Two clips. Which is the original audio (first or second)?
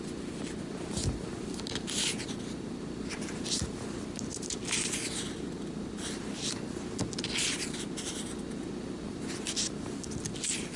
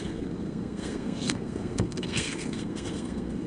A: first